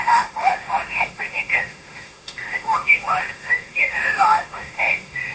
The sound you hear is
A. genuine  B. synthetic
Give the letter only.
B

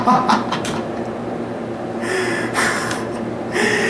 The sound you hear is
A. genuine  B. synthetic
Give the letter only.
B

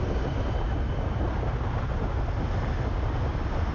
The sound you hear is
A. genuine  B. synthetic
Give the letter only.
A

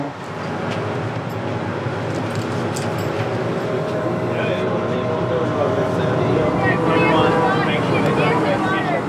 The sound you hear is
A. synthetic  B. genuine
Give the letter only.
B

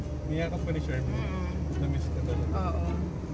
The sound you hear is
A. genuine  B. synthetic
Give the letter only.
A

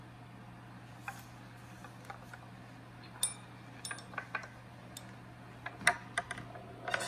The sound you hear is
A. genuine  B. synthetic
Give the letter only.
A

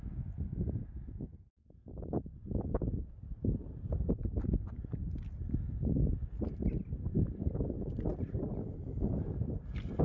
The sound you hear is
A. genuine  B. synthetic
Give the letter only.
A